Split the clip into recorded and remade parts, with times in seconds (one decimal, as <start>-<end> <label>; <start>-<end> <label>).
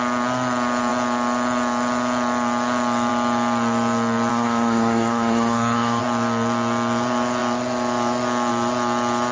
0.0-4.3 recorded; 4.3-6.0 remade; 6.0-9.3 recorded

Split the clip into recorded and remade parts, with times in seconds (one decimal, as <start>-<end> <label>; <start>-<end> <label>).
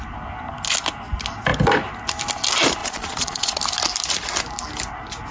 0.0-2.8 recorded; 2.8-3.6 remade; 3.6-5.3 recorded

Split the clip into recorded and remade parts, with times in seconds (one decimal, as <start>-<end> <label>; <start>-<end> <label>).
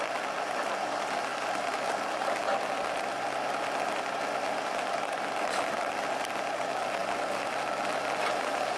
0.0-7.0 recorded; 7.0-7.7 remade; 7.7-8.8 recorded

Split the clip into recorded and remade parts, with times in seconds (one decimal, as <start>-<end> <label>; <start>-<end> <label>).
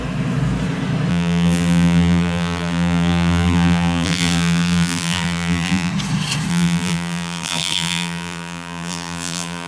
0.0-1.1 recorded; 1.1-5.9 remade; 5.9-6.5 recorded; 6.5-9.7 remade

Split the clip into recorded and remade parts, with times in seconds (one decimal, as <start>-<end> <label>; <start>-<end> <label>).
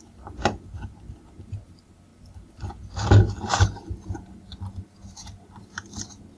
0.0-6.4 recorded